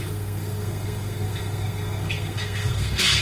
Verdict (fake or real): fake